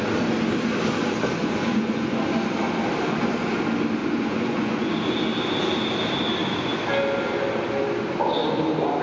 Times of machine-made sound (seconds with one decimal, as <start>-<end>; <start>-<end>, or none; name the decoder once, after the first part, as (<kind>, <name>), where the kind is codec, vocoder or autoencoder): 1.4-2.2 (vocoder, Vocos); 4.0-4.9